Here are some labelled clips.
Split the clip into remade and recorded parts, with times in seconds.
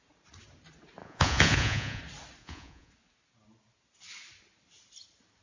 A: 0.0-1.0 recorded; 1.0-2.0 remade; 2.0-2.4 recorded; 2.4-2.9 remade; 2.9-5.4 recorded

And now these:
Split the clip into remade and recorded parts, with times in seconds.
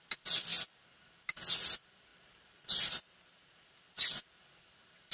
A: 0.0-2.1 recorded; 2.1-4.3 remade; 4.3-5.1 recorded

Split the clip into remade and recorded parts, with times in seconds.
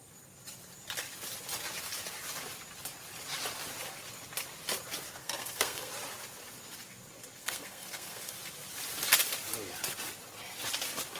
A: 0.0-5.2 recorded; 5.2-5.9 remade; 5.9-7.4 recorded; 7.4-8.3 remade; 8.3-11.2 recorded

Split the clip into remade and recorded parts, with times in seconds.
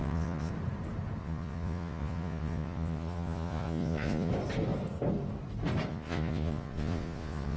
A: 0.0-0.5 remade; 0.5-1.2 recorded; 1.2-4.3 remade; 4.3-5.9 recorded; 5.9-7.6 remade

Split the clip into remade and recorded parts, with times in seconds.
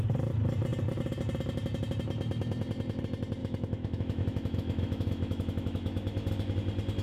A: 0.0-3.4 recorded; 3.4-6.3 remade; 6.3-7.0 recorded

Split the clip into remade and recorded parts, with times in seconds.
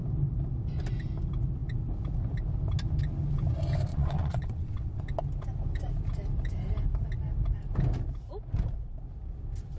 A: 0.0-3.9 recorded; 3.9-5.0 remade; 5.0-9.8 recorded